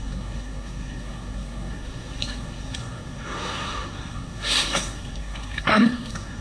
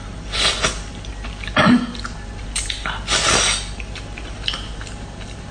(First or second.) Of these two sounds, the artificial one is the first